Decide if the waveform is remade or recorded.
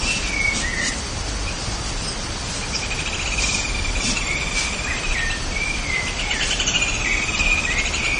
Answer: remade